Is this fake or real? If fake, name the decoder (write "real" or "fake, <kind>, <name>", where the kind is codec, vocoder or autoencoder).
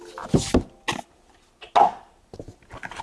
real